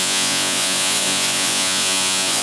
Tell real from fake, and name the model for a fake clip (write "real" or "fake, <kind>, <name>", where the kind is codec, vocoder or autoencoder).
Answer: fake, vocoder, Vocos